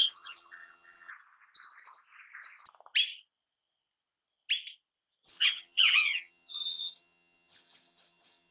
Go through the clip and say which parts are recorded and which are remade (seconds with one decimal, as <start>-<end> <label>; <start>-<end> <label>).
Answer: 0.0-1.1 remade; 1.1-5.3 recorded; 5.3-8.5 remade